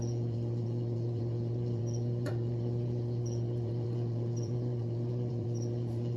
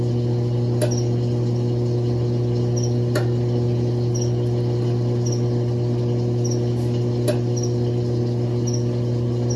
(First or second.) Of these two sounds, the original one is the second